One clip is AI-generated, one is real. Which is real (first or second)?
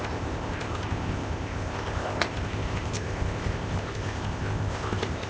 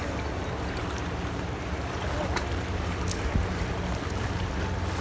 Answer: second